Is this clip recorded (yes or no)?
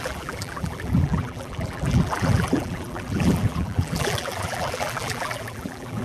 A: no